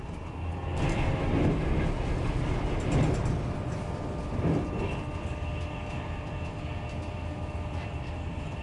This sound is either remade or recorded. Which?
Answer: recorded